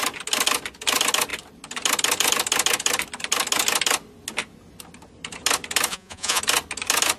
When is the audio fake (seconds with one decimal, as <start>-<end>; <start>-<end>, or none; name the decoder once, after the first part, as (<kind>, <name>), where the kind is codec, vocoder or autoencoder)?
5.9-6.4 (vocoder, Vocos)